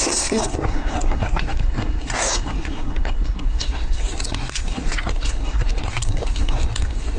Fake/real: fake